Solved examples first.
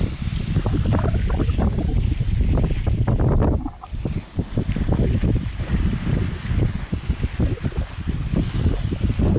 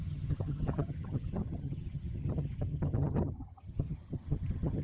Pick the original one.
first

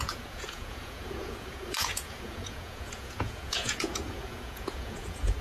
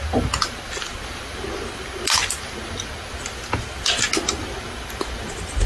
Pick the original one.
second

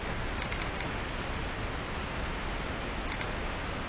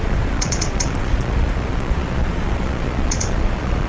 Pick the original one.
first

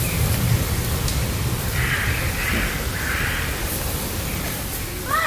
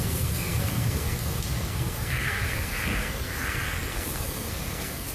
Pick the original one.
first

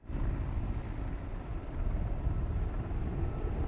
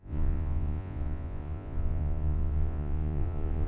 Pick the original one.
first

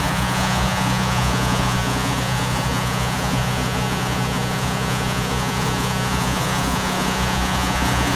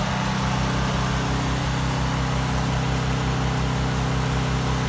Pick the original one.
second